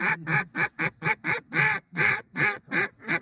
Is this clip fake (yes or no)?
yes